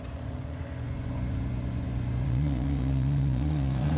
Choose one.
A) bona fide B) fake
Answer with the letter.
B